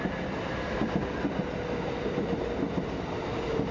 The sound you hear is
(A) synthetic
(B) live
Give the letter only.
B